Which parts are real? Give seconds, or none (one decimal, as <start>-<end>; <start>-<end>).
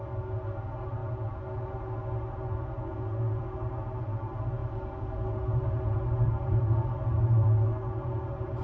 none